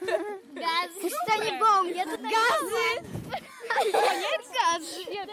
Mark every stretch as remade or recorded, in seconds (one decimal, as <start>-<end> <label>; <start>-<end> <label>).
0.0-1.0 recorded; 1.0-1.5 remade; 1.5-2.7 recorded; 2.7-4.1 remade; 4.1-5.3 recorded